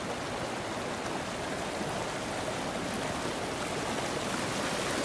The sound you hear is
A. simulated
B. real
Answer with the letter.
B